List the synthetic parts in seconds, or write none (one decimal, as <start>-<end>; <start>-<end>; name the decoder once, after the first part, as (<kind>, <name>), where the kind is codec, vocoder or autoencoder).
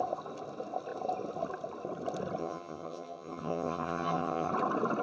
2.4-4.5 (vocoder, HiFi-GAN)